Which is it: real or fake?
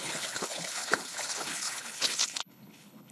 fake